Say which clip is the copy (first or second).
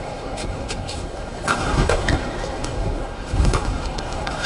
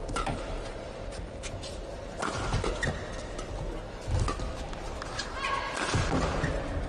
first